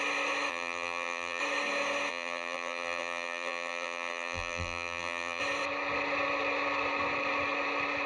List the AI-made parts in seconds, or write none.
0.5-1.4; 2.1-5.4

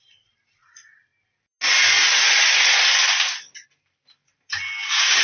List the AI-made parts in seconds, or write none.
0.0-1.1; 3.8-4.2

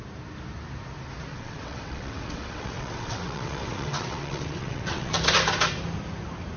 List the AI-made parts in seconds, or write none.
1.3-5.1